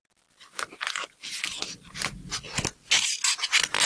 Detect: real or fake real